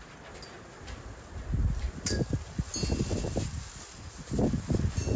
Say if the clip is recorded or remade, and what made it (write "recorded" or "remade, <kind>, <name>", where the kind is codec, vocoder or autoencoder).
recorded